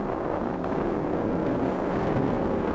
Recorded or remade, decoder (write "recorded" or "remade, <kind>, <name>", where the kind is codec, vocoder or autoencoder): remade, codec, SNAC